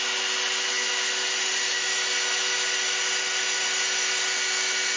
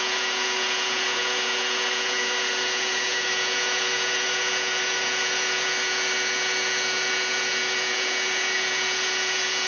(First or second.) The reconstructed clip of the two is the second